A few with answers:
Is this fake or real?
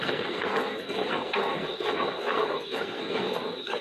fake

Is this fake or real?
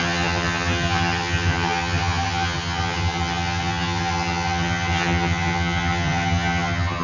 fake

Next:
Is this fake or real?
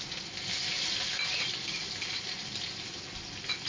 real